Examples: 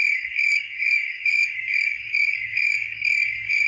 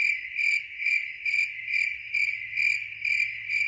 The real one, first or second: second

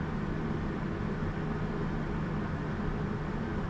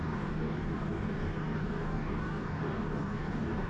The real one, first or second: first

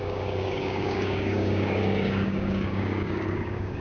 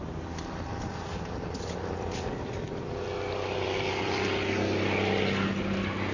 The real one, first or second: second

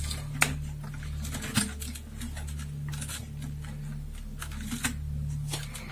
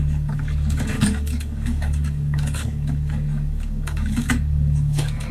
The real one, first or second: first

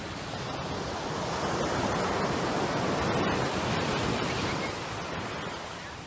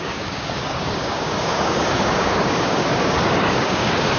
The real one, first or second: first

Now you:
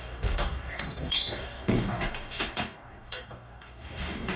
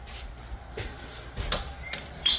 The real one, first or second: second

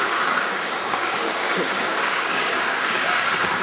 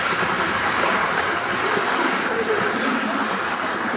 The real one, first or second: second